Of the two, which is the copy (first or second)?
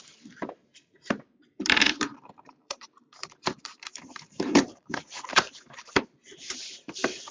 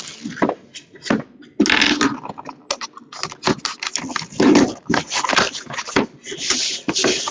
first